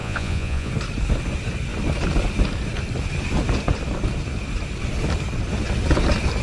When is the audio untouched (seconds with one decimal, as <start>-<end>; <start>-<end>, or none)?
0.7-6.4